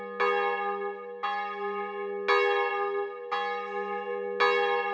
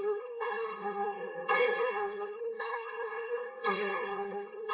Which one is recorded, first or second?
first